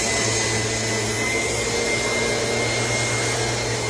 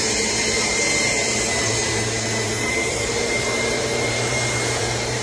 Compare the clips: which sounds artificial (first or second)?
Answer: second